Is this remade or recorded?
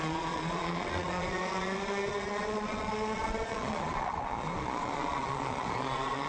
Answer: remade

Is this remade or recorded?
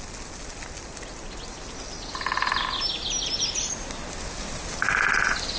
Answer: recorded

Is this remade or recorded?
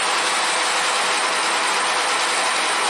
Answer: recorded